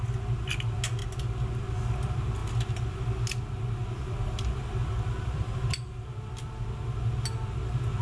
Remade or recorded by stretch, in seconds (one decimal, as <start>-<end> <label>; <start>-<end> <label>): 0.0-2.4 recorded; 2.4-3.0 remade; 3.0-3.8 recorded; 3.8-6.5 remade; 6.5-8.0 recorded